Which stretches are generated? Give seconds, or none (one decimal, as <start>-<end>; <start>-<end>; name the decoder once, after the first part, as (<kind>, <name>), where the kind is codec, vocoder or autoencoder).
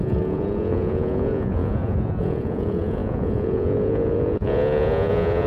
0.0-5.5 (vocoder, Vocos)